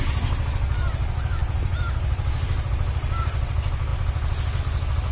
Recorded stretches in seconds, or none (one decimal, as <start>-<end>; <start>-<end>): 0.0-5.1